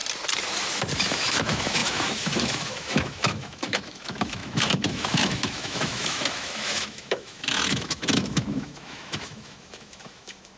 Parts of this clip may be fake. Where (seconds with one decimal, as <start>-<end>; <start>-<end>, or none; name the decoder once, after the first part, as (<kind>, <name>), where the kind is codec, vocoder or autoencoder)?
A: 1.0-10.6 (autoencoder, DAC-VAE)